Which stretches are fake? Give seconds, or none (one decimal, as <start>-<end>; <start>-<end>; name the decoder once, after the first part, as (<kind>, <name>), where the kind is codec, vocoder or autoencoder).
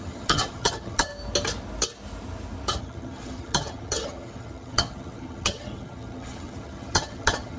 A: 0.0-1.1 (vocoder, HiFi-GAN); 2.8-7.6